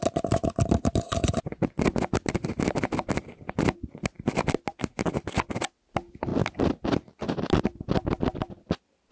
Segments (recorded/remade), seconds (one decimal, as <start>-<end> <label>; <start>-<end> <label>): 0.0-9.1 recorded